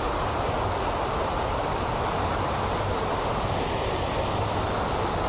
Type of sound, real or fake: real